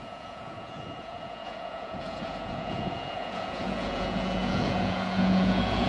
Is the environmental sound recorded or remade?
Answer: remade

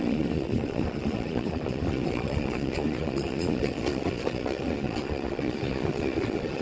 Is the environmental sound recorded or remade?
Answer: remade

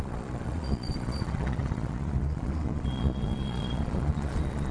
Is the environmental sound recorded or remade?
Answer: remade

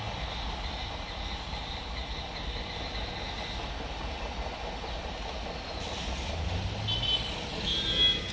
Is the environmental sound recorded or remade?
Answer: recorded